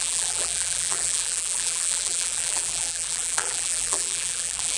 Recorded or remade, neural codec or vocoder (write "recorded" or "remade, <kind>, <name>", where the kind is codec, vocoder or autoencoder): remade, vocoder, BigVGAN v2